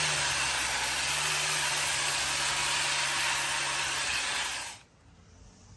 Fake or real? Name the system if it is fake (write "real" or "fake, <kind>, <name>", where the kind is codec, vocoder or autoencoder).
real